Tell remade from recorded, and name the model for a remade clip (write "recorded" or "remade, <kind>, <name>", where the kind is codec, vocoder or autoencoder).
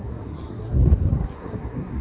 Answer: remade, codec, SNAC